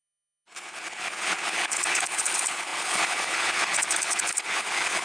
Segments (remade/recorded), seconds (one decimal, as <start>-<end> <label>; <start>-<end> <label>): 0.0-5.0 remade